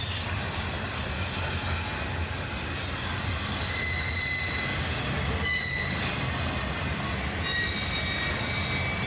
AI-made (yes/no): no